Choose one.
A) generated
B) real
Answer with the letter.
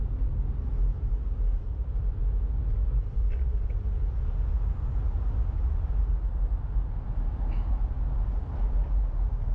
B